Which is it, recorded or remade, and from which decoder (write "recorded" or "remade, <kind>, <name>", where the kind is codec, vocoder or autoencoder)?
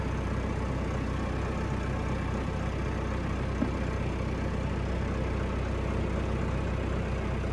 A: recorded